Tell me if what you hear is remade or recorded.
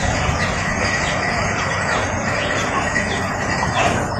remade